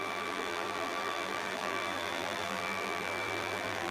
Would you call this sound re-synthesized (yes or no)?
yes